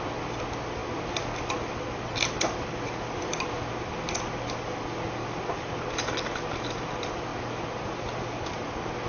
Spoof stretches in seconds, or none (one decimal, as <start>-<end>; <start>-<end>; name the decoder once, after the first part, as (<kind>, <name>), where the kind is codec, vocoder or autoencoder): none